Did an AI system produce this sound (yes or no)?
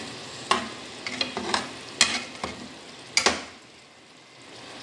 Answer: no